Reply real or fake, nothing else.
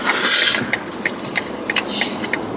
real